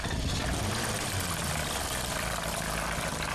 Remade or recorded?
remade